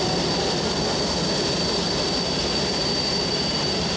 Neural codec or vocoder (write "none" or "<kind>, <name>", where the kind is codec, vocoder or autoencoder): none